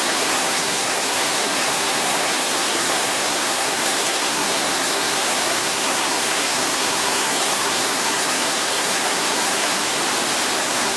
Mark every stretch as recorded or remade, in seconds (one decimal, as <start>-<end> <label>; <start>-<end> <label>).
0.0-10.0 remade; 10.0-10.6 recorded; 10.6-11.0 remade